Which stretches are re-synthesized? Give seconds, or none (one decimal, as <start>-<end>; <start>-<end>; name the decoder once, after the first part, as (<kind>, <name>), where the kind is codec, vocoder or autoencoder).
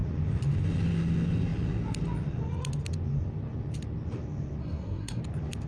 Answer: 4.6-5.2 (codec, SNAC)